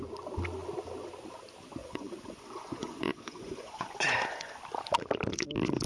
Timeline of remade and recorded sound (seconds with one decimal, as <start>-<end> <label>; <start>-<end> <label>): 0.0-1.8 recorded; 1.8-4.6 remade; 4.6-5.9 recorded